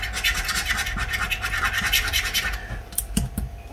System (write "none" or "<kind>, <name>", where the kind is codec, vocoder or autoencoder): none